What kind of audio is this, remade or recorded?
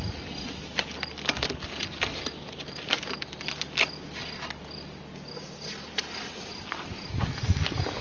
recorded